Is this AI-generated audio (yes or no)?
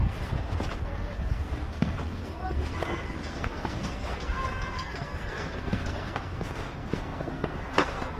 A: yes